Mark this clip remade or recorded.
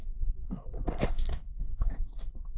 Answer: remade